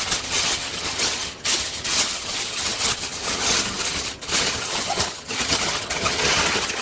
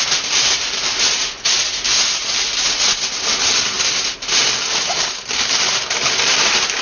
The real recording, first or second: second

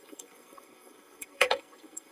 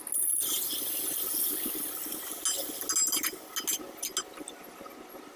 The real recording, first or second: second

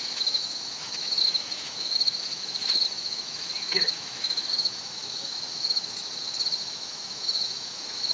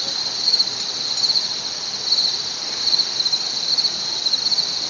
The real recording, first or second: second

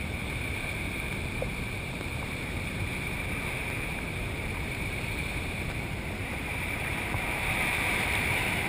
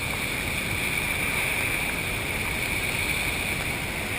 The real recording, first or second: second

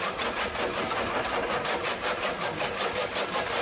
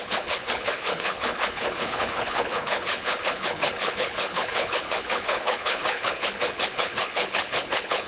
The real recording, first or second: first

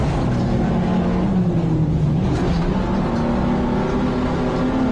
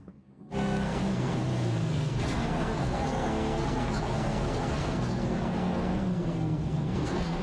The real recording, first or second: first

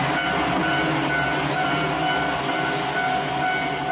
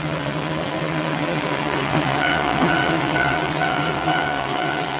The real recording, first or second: first